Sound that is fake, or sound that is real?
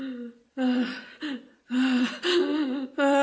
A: real